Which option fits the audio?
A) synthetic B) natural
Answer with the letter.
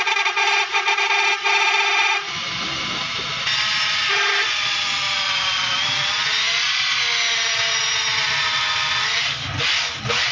B